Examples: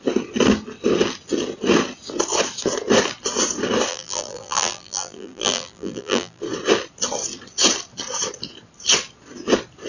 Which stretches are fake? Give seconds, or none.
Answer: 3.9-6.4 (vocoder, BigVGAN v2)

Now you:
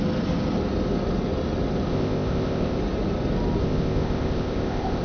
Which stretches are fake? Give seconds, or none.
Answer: 1.9-2.8 (codec, ZipCodec); 3.6-5.0